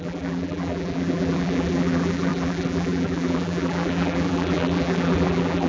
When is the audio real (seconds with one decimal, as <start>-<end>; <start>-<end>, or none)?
none